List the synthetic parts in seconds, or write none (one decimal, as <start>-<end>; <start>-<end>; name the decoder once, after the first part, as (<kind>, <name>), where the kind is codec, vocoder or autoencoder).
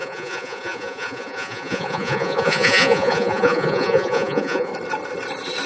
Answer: 0.0-4.7 (vocoder, Vocos)